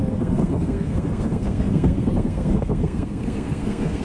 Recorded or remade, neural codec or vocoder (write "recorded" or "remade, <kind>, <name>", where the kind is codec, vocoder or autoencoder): remade, codec, SNAC